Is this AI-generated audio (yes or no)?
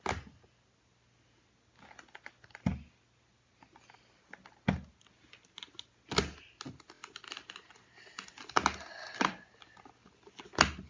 no